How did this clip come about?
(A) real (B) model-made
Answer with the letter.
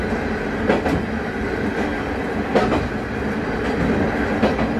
A